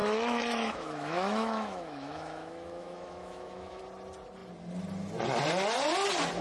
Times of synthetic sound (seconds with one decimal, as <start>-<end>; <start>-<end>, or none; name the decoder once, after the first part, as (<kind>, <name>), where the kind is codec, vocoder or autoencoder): 0.0-3.8 (autoencoder, DAC-VAE)